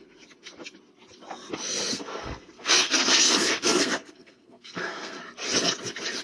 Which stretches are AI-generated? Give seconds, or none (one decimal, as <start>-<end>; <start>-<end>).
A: 1.9-5.2